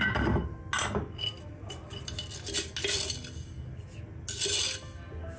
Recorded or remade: recorded